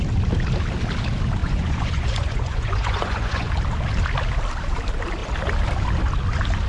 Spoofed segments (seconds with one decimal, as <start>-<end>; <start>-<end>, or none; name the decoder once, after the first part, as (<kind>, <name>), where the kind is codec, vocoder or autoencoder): 1.4-3.5 (vocoder, Vocos)